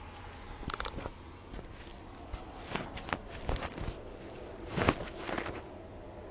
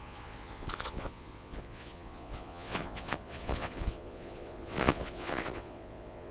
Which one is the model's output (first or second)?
second